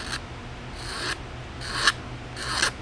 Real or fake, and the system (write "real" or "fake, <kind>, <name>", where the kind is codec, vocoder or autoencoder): real